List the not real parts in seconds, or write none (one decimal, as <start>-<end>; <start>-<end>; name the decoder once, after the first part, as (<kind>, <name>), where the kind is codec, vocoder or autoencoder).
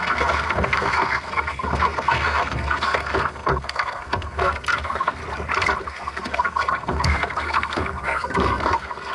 0.0-5.2 (codec, SNAC); 5.8-9.1